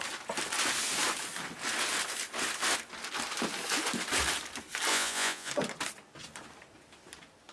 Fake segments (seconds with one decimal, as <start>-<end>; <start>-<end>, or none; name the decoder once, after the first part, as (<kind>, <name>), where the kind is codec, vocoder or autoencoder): 4.9-5.5 (vocoder, Vocos)